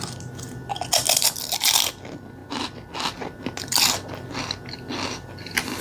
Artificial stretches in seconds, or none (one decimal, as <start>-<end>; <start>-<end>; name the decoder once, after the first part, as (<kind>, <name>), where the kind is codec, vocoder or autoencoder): none